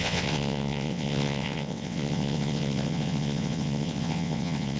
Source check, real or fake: fake